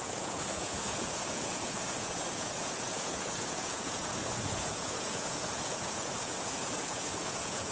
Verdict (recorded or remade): remade